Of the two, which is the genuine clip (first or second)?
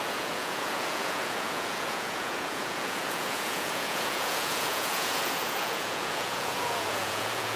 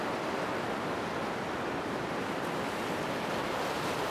second